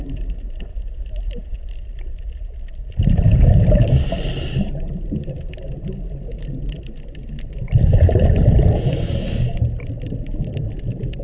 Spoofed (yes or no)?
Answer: no